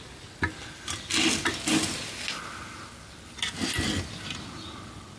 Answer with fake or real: real